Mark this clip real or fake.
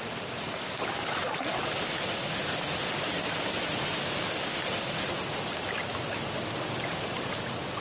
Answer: real